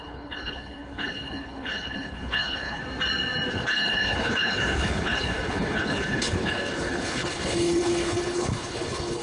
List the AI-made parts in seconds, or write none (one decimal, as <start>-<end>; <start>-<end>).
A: 0.0-2.8; 3.5-9.2